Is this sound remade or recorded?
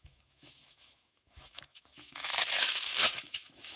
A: remade